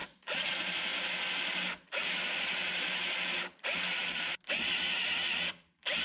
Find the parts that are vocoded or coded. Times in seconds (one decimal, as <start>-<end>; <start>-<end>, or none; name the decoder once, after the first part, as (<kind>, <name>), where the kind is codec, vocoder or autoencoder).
0.0-0.5 (vocoder, Vocos)